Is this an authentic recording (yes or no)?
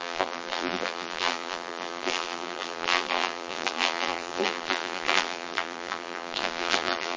no